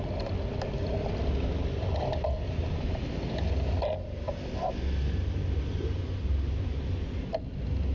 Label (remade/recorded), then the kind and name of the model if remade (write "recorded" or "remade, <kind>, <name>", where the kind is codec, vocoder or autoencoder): recorded